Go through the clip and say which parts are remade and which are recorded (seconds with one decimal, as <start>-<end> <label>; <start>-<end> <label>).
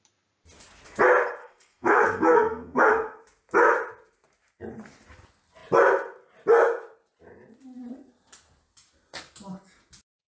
0.0-1.4 recorded; 1.4-2.9 remade; 2.9-10.3 recorded